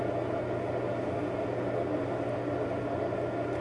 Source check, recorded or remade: recorded